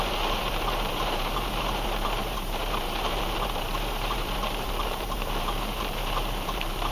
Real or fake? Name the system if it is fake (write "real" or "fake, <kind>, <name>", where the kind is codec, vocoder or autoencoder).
fake, vocoder, BigVGAN v2